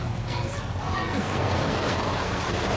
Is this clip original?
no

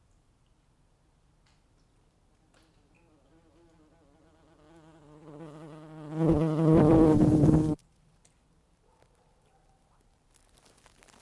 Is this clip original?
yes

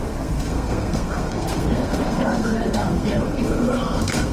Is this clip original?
no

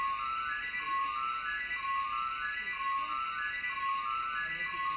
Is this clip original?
yes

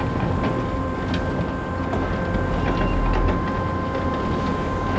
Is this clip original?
yes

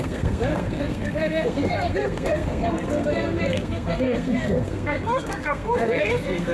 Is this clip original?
no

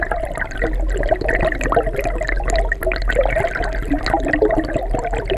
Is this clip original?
yes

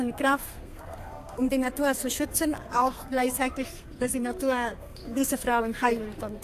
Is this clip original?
no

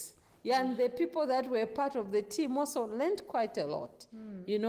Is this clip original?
yes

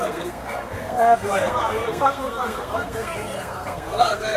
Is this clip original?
no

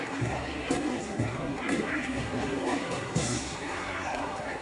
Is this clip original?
no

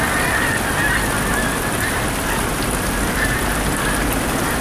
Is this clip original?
yes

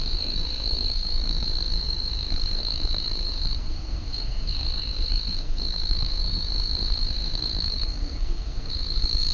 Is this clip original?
no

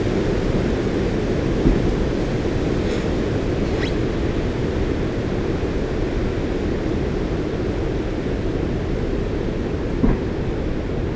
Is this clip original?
yes